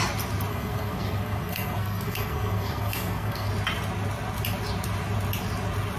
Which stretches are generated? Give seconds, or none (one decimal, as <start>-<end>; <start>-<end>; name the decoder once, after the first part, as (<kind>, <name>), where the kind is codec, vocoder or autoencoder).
0.5-3.5 (codec, SNAC)